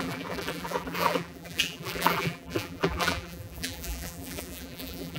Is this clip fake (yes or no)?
yes